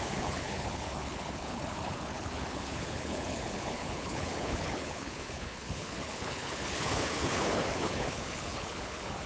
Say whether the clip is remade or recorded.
remade